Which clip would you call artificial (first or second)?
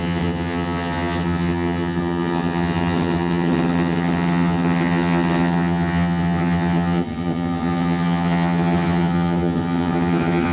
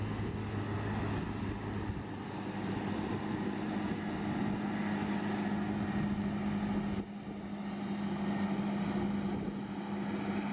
first